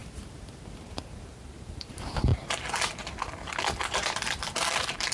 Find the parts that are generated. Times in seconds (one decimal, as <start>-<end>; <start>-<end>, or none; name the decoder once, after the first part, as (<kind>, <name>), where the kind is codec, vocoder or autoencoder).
0.0-2.3 (vocoder, BigVGAN v2); 3.9-5.1